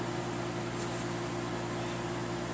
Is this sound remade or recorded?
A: recorded